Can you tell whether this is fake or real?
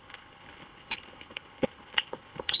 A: fake